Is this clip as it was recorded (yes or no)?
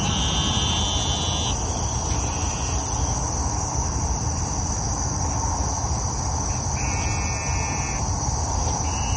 yes